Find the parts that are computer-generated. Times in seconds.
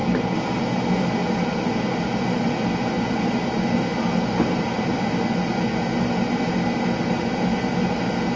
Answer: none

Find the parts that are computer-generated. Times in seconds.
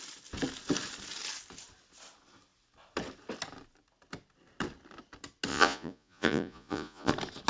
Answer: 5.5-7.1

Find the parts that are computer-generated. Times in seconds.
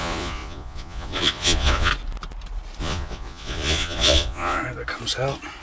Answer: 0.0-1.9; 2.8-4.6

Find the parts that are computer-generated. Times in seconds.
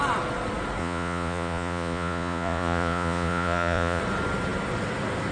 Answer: 0.8-4.0